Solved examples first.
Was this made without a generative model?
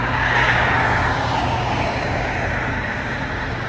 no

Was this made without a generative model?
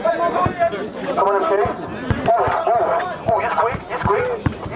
yes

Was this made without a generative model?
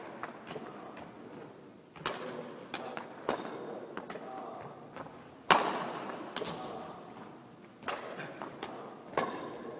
yes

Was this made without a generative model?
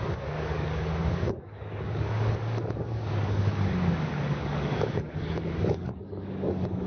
no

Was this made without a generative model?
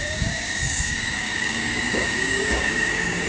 no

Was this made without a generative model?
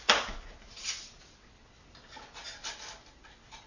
yes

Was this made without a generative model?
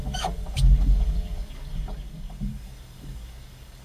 no